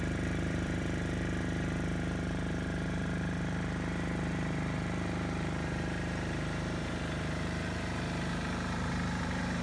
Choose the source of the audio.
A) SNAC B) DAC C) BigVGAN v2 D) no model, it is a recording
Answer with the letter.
C